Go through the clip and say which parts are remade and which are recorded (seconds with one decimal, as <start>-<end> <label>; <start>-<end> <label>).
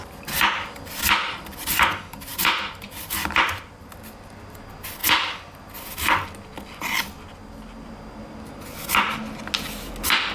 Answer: 0.0-10.3 recorded